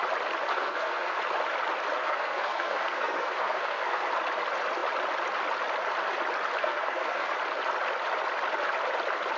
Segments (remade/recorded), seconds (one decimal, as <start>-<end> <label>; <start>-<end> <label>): 0.0-0.5 recorded; 0.5-1.2 remade; 1.2-2.0 recorded; 2.0-4.1 remade; 4.1-6.6 recorded; 6.6-7.3 remade; 7.3-9.4 recorded